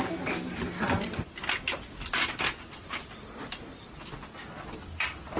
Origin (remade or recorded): recorded